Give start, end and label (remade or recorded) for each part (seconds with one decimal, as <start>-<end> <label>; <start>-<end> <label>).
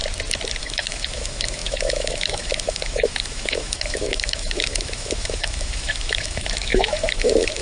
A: 0.0-0.6 recorded; 0.6-7.6 remade